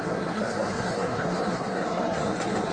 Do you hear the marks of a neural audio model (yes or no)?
yes